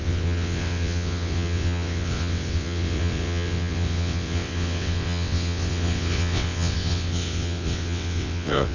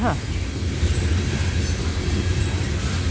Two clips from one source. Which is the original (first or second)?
second